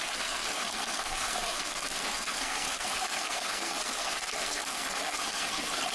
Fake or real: fake